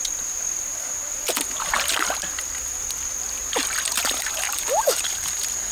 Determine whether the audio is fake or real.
real